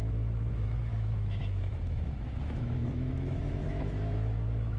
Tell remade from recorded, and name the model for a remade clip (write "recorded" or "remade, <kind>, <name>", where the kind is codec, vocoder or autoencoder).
remade, autoencoder, DAC-VAE